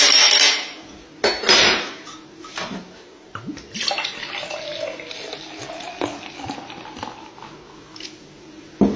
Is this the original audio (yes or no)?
yes